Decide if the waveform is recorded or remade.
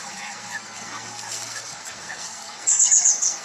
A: remade